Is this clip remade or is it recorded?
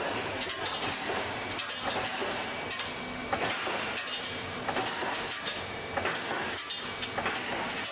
remade